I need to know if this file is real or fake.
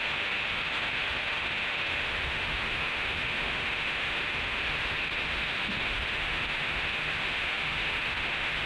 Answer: fake